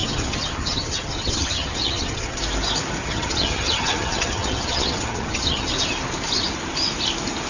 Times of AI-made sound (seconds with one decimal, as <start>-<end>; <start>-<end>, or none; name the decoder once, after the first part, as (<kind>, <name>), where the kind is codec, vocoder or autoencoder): 0.0-2.4 (vocoder, HiFi-GAN); 3.0-5.7